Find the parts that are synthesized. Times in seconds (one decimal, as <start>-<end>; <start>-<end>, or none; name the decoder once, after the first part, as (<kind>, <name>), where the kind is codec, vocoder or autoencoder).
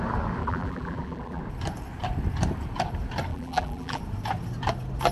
0.4-1.4 (vocoder, BigVGAN v2); 3.3-4.0